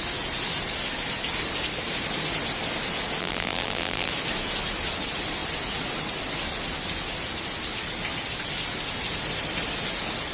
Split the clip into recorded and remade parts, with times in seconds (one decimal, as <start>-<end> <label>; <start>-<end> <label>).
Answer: 0.0-3.2 recorded; 3.2-4.1 remade; 4.1-10.3 recorded